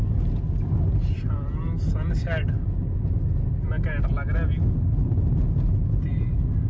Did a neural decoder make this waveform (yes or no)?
no